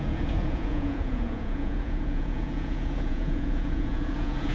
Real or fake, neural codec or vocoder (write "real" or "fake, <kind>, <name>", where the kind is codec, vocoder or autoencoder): fake, vocoder, Vocos